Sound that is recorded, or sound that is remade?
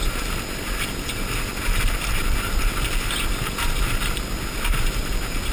recorded